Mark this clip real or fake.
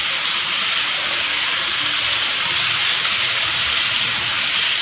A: real